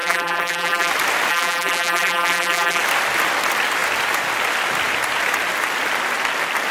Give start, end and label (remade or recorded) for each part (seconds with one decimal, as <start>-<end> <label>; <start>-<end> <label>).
0.0-0.9 remade; 0.9-1.3 recorded; 1.3-2.8 remade; 2.8-6.7 recorded